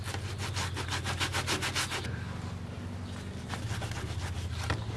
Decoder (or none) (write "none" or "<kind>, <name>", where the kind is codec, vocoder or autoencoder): none